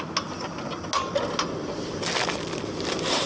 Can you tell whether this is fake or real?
real